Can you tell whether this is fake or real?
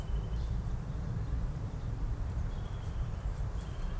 fake